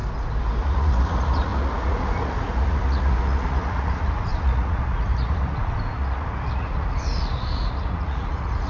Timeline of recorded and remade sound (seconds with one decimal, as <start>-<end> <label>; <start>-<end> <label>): 0.0-0.6 recorded; 0.6-8.7 remade

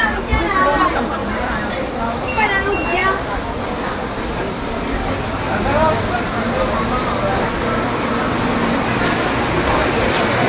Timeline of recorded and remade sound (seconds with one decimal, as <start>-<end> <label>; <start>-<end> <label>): 0.0-1.2 recorded; 1.2-2.0 remade; 2.0-10.5 recorded